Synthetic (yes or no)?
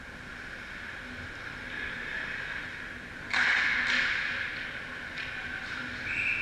no